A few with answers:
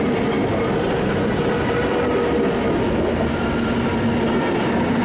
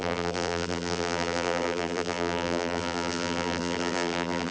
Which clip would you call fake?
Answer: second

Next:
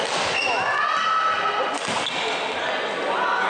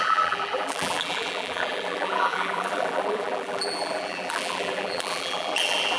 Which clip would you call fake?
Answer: second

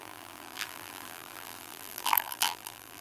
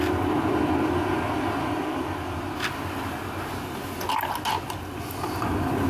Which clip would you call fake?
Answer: first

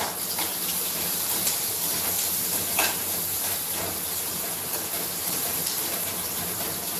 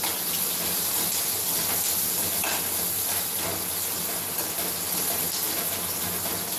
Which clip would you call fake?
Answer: first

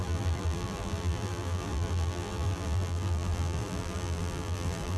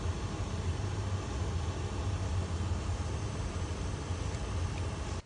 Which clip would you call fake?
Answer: first